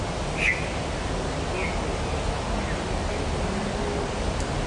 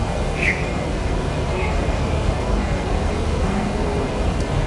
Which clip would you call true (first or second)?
first